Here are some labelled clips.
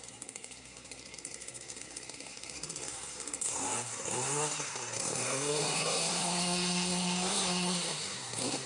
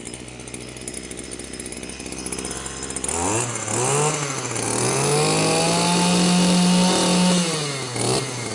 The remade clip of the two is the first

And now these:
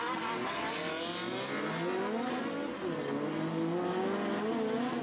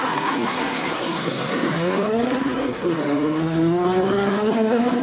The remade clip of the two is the second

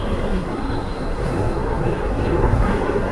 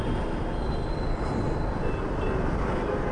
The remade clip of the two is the first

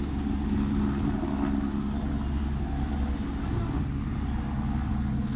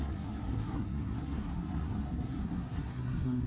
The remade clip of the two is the second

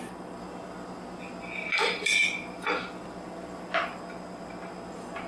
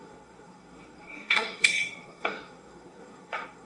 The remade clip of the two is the second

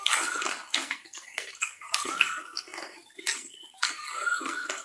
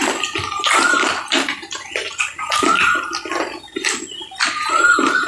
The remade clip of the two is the first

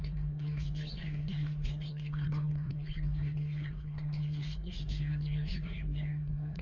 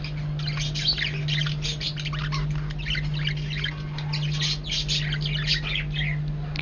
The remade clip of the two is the first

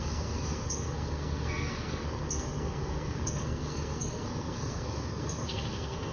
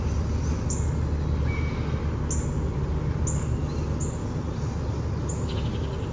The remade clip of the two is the first